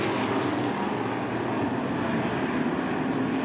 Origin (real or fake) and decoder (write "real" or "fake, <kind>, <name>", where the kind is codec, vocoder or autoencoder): real